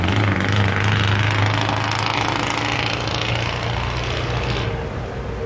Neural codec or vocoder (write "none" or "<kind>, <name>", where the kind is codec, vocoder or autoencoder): none